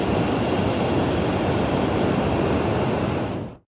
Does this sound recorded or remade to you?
recorded